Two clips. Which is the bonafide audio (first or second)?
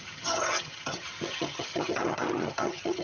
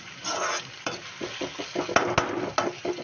second